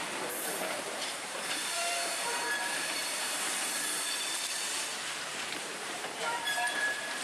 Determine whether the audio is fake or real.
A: fake